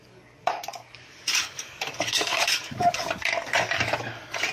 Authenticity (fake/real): fake